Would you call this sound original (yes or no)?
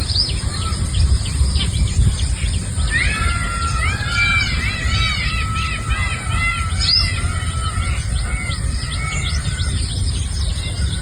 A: yes